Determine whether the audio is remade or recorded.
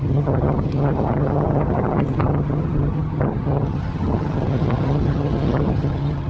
remade